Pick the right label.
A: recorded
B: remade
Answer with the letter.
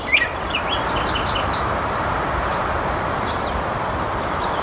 B